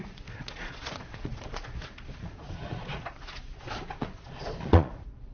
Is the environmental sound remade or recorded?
remade